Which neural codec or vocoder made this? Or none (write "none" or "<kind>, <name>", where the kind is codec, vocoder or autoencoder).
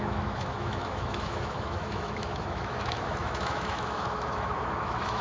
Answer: autoencoder, DAC-VAE